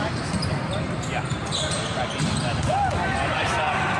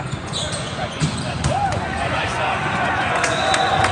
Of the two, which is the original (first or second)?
first